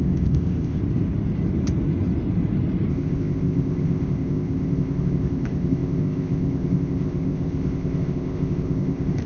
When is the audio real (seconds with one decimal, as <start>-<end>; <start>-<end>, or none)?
0.8-2.9